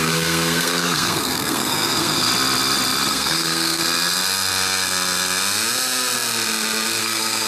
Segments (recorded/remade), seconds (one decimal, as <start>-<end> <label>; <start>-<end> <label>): 0.0-2.3 remade; 2.3-3.1 recorded; 3.1-3.8 remade; 3.8-7.0 recorded; 7.0-7.5 remade